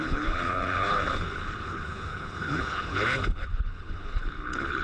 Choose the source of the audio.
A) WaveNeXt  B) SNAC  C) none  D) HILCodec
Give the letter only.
D